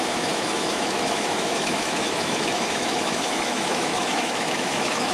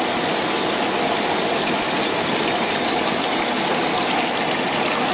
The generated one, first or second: first